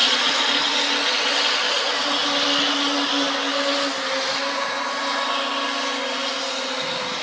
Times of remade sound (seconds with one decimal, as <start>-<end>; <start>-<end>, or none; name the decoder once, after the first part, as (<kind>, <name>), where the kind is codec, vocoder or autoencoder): none

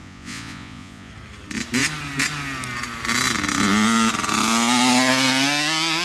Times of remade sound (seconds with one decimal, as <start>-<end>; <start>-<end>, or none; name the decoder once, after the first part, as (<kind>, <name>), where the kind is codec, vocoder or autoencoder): 0.0-1.1 (vocoder, Vocos)

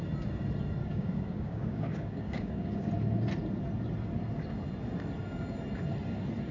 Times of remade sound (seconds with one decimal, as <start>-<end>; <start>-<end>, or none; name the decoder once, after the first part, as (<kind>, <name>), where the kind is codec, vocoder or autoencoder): 0.8-2.9 (codec, DAC)

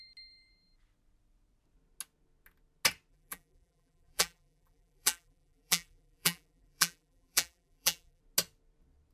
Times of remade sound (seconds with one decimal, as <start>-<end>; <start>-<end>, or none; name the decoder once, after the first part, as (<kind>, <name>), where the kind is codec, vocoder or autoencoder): 3.1-8.2 (vocoder, BigVGAN v2)

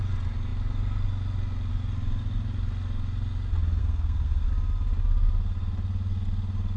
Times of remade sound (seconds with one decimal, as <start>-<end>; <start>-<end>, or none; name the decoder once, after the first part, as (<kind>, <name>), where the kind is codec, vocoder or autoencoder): 3.8-4.5 (codec, SNAC)

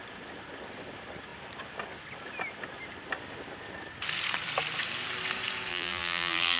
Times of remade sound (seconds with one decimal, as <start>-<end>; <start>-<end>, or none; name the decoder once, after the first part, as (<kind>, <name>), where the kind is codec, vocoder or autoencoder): 5.7-6.6 (vocoder, BigVGAN v2)